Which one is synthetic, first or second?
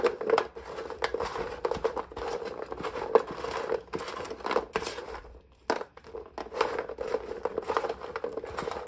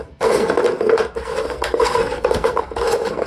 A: second